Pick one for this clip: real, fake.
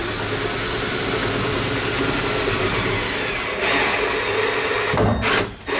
real